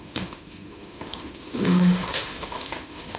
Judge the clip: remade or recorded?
remade